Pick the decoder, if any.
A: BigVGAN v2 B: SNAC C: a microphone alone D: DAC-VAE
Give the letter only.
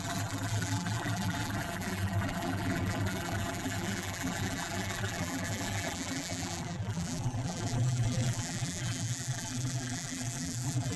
A